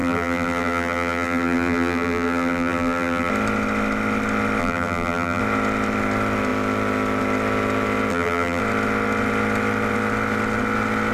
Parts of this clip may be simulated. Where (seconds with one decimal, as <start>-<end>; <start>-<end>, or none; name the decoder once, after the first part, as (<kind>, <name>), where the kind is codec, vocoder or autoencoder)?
0.0-3.3 (vocoder, BigVGAN v2); 4.6-5.4; 8.1-8.6